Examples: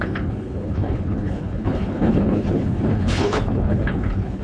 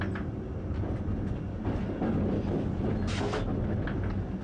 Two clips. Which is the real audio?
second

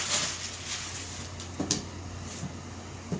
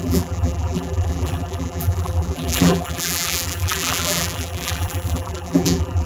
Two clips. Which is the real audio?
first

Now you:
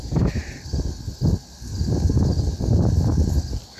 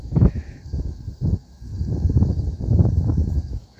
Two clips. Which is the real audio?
first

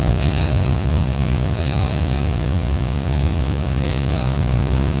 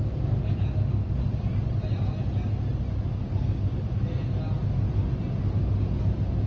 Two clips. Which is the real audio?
second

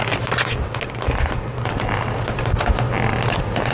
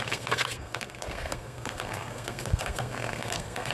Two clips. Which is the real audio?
first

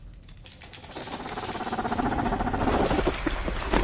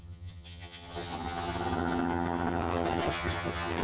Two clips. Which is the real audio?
first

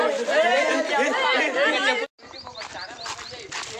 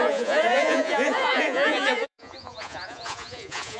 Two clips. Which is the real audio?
first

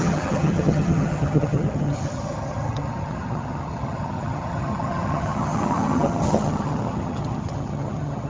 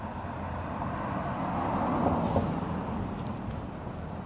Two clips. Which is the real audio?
second